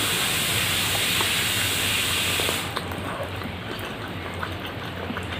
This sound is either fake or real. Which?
fake